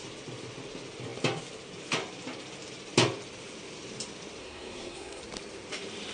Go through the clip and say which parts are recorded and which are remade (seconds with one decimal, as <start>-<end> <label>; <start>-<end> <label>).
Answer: 0.0-4.4 recorded; 4.4-5.2 remade; 5.2-6.1 recorded